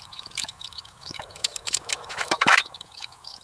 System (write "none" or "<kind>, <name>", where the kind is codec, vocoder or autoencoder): autoencoder, DAC-VAE